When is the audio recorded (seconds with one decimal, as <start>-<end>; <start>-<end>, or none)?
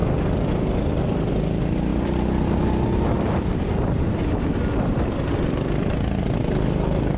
0.0-1.9; 6.2-7.2